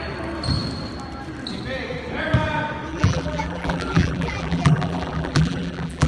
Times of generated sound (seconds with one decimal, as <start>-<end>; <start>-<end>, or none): 2.9-6.1